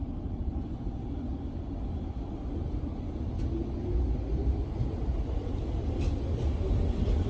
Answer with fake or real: real